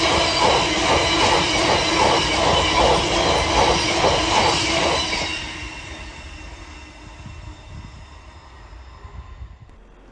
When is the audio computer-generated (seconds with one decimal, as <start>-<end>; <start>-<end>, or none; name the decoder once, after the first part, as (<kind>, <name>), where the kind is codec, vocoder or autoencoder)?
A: none